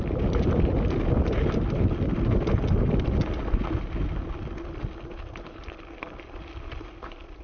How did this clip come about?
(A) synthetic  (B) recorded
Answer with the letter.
B